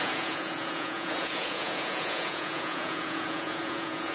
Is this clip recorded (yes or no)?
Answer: no